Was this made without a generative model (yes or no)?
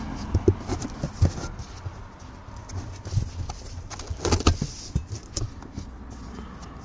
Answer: yes